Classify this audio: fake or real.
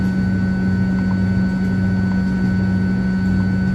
real